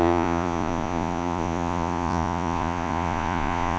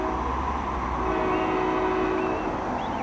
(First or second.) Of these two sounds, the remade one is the first